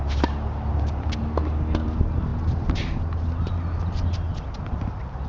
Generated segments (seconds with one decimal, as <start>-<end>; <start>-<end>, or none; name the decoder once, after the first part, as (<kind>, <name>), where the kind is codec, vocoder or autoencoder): none